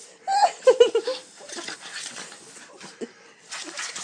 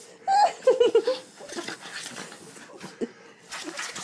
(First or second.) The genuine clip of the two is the second